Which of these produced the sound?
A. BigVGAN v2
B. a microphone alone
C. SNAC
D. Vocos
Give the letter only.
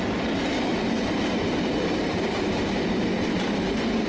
B